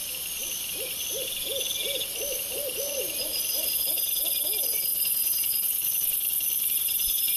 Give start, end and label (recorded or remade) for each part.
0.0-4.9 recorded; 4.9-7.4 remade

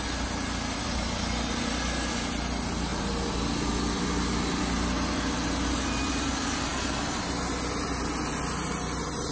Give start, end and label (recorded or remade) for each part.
0.0-9.3 recorded

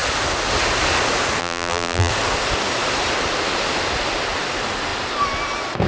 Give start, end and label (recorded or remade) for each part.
0.0-1.4 recorded; 1.4-2.1 remade; 2.1-5.9 recorded

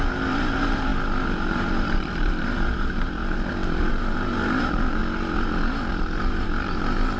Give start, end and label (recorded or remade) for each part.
0.0-0.9 remade; 0.9-1.5 recorded; 1.5-3.2 remade; 3.2-3.9 recorded; 3.9-5.0 remade; 5.0-5.9 recorded; 5.9-7.2 remade

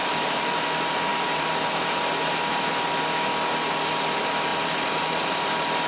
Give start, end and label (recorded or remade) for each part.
0.0-0.6 remade; 0.6-1.1 recorded; 1.1-2.7 remade; 2.7-4.5 recorded; 4.5-5.5 remade; 5.5-5.9 recorded